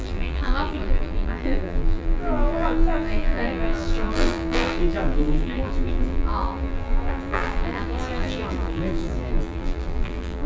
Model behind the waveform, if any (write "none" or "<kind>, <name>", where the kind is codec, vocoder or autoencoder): vocoder, BigVGAN v2